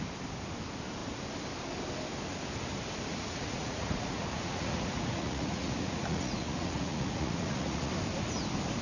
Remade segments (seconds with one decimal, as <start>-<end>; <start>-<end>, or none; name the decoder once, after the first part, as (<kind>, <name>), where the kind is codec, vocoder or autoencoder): 3.1-7.9 (vocoder, Vocos)